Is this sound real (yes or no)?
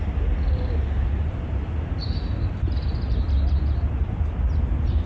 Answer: yes